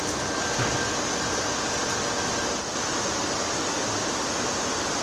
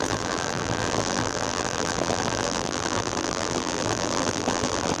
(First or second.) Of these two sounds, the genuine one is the first